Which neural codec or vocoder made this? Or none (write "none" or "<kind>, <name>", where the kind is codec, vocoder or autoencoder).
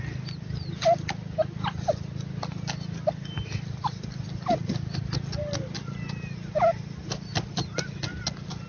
none